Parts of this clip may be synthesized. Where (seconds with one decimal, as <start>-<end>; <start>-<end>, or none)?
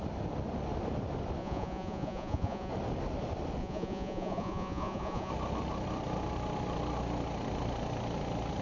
1.4-2.7; 3.6-5.3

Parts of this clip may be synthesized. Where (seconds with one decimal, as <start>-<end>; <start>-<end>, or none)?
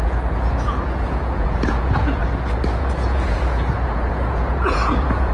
0.0-2.2; 2.7-5.3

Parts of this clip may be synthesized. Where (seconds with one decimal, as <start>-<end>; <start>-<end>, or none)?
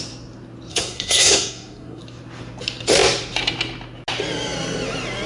0.7-2.0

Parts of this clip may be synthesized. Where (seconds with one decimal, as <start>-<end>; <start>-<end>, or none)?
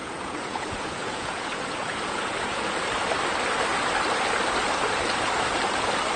0.0-2.6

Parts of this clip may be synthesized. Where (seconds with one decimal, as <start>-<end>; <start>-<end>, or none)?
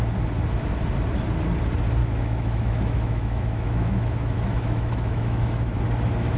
2.0-5.8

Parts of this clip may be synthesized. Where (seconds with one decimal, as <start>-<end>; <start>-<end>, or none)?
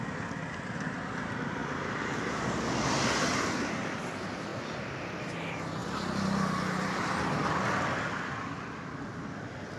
none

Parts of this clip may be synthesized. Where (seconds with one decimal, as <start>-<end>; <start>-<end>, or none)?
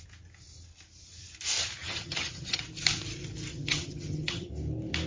1.8-2.6; 3.5-4.5